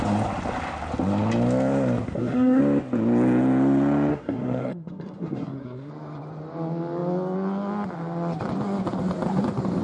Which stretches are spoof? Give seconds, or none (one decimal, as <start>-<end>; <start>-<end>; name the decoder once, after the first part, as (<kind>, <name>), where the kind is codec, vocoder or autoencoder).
2.0-2.6 (codec, SNAC); 4.1-5.9